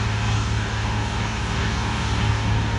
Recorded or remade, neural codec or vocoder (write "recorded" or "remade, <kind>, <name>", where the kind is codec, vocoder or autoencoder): remade, codec, DAC